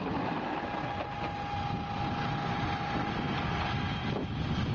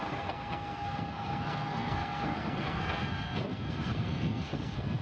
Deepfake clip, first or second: second